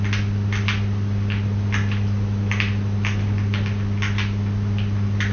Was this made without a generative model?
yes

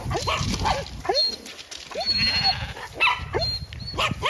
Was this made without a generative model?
yes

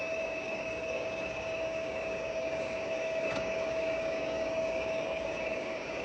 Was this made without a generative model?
no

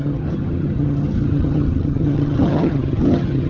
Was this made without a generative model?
no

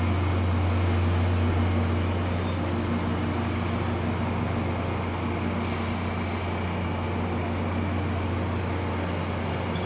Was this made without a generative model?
yes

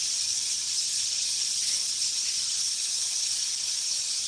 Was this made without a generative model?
no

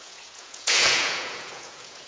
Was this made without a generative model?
no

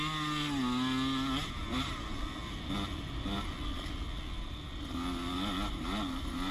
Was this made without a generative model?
yes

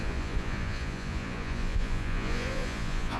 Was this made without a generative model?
no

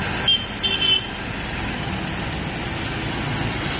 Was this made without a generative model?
yes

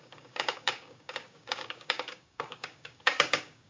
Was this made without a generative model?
no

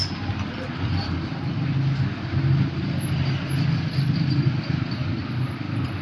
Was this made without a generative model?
yes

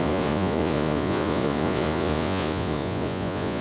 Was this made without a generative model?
no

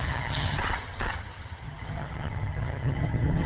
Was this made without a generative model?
no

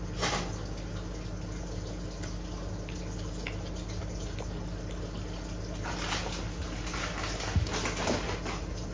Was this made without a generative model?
yes